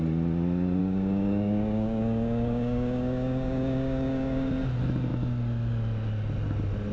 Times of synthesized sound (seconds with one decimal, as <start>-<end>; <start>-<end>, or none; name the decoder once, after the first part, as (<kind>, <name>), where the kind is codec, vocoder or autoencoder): 0.8-4.5 (codec, DAC)